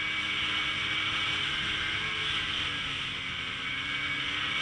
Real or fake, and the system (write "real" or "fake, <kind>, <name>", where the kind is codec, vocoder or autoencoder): real